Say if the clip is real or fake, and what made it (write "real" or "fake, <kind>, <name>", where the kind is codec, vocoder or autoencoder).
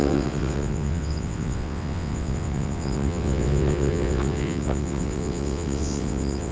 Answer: fake, vocoder, WaveNeXt